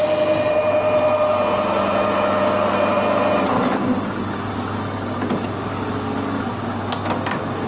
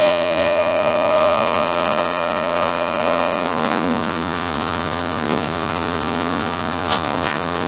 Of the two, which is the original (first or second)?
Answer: first